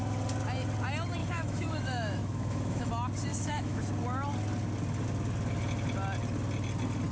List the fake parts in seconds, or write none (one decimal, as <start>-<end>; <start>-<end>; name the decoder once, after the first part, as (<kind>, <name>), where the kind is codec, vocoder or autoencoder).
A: 1.2-2.9 (autoencoder, DAC-VAE); 3.3-3.8